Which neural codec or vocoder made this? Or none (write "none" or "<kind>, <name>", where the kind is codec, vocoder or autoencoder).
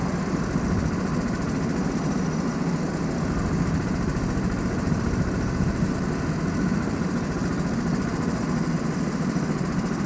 none